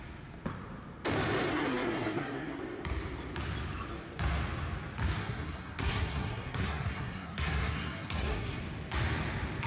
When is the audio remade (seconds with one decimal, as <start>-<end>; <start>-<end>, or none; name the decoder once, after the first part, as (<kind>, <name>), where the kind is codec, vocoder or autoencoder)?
1.5-2.6 (codec, SNAC); 5.2-8.6